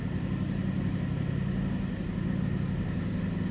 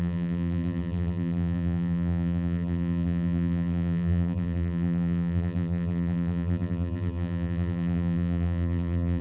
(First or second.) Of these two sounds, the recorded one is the first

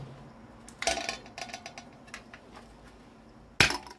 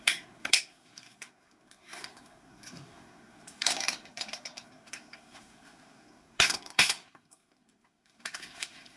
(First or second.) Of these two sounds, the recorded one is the first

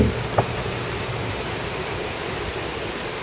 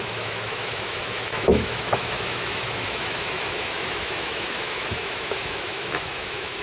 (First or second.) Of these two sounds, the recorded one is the first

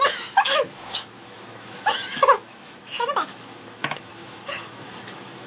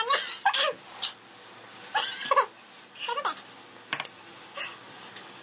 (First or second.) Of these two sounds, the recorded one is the second